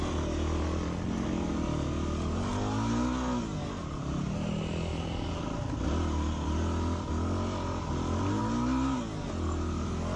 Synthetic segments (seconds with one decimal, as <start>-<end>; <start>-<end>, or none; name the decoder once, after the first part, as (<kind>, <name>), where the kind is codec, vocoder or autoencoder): none